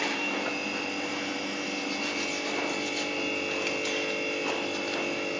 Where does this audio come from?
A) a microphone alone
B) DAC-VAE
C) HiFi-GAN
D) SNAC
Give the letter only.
A